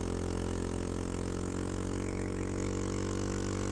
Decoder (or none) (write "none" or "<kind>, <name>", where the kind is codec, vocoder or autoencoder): autoencoder, DAC-VAE